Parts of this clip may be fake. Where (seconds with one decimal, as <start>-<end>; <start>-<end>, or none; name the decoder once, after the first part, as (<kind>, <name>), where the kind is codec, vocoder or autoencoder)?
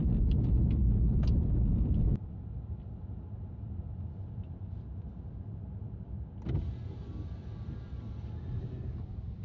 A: 0.0-2.4 (vocoder, BigVGAN v2)